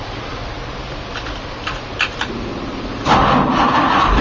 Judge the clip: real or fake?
real